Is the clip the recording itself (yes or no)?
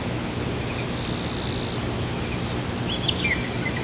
yes